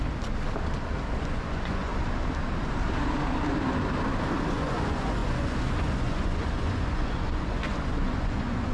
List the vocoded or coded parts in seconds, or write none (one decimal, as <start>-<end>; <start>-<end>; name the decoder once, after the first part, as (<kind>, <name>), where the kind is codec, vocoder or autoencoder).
1.2-1.9 (vocoder, Vocos); 4.5-8.7